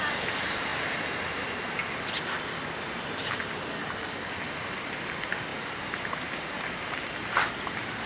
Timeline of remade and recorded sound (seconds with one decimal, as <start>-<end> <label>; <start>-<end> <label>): 0.0-8.1 recorded